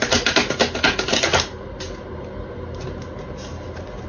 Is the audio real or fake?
real